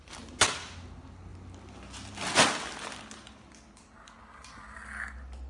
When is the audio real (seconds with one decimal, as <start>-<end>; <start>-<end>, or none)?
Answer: 0.0-5.5